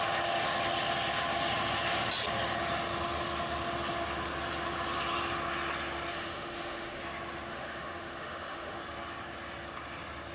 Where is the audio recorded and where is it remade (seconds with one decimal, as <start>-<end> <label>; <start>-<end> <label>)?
0.0-6.1 recorded; 6.1-7.0 remade; 7.0-7.5 recorded; 7.5-8.8 remade; 8.8-10.3 recorded

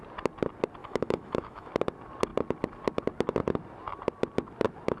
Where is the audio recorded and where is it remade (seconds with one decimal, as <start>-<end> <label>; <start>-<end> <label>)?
0.0-0.8 recorded; 0.8-1.7 remade; 1.7-5.0 recorded

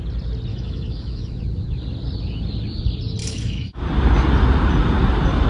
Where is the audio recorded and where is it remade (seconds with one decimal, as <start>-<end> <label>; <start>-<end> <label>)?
0.0-0.5 recorded; 0.5-1.4 remade; 1.4-3.2 recorded; 3.2-3.8 remade; 3.8-5.5 recorded

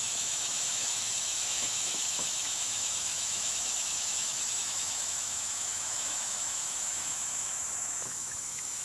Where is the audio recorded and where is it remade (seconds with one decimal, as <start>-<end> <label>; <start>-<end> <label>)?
0.0-8.8 remade

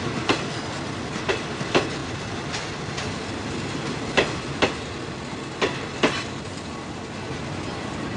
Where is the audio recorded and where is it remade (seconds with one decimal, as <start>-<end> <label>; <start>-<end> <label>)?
0.0-8.2 recorded